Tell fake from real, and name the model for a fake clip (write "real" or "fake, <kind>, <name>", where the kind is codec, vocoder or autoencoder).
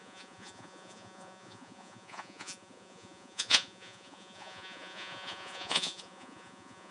fake, vocoder, Vocos